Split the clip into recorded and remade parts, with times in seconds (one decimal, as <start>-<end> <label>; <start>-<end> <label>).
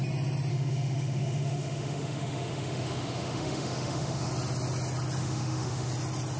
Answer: 0.0-0.5 recorded; 0.5-4.3 remade; 4.3-5.2 recorded; 5.2-5.9 remade; 5.9-6.4 recorded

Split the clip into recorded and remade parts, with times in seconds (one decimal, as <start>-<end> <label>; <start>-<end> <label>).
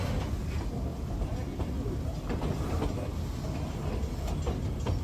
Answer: 0.0-5.0 recorded